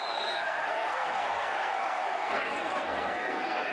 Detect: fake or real fake